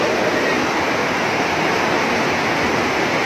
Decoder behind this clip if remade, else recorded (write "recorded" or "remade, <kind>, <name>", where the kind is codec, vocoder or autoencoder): recorded